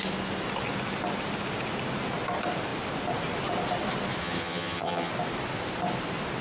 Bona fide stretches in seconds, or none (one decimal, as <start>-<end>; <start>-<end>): 0.0-4.2; 5.1-6.4